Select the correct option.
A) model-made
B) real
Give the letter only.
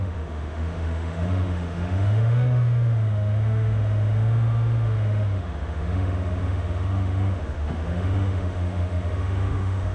A